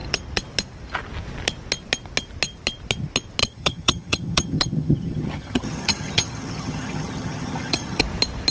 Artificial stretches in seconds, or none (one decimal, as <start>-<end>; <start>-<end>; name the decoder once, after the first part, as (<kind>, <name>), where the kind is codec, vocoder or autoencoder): 3.4-8.0 (vocoder, HiFi-GAN)